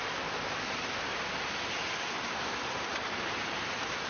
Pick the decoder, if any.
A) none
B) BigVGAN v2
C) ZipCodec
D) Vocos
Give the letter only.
A